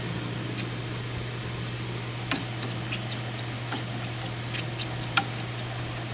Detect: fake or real real